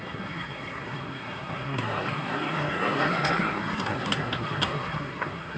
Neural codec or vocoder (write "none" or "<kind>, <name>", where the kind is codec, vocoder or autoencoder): codec, SNAC